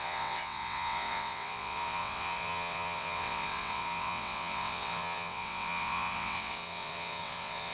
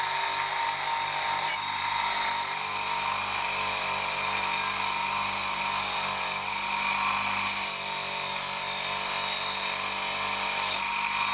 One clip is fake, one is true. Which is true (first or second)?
second